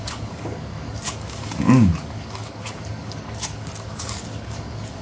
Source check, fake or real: fake